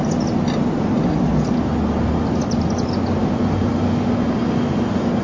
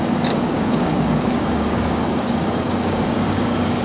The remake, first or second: second